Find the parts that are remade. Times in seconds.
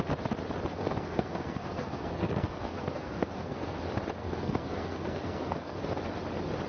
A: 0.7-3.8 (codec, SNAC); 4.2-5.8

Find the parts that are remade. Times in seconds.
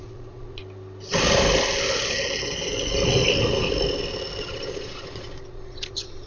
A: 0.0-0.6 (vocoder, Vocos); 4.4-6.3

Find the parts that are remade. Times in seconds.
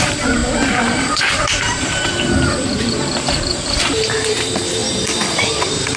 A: 0.0-4.8 (vocoder, BigVGAN v2); 5.3-6.0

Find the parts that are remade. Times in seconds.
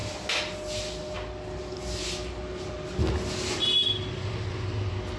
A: none